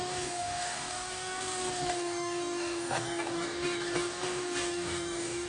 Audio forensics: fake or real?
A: fake